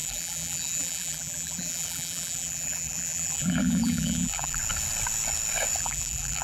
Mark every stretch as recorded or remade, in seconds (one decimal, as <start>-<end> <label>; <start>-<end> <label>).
0.0-4.6 remade; 4.6-5.8 recorded; 5.8-6.4 remade